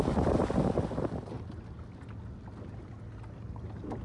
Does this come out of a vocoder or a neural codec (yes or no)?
no